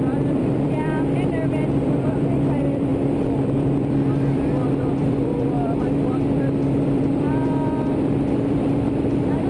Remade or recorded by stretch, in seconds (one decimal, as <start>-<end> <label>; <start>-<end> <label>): 0.0-9.5 remade

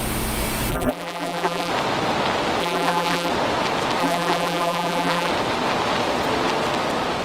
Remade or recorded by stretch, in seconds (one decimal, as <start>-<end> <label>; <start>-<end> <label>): 0.0-0.7 recorded; 0.7-1.7 remade; 1.7-2.6 recorded; 2.6-3.3 remade; 3.3-4.0 recorded; 4.0-5.3 remade; 5.3-7.2 recorded

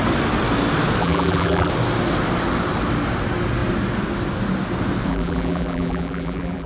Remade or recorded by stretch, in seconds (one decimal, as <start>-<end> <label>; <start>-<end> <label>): 0.0-1.0 recorded; 1.0-1.7 remade; 1.7-5.1 recorded; 5.1-6.7 remade

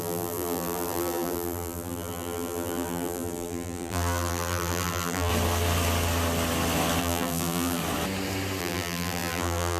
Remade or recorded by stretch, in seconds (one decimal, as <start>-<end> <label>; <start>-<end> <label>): 0.0-5.3 remade; 5.3-7.0 recorded; 7.0-7.8 remade; 7.8-8.6 recorded; 8.6-9.8 remade